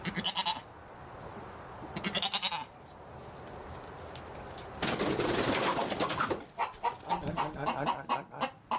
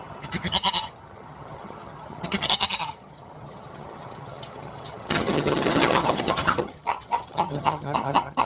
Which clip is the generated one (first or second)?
second